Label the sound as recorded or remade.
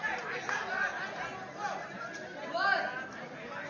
recorded